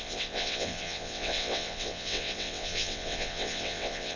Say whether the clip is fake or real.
fake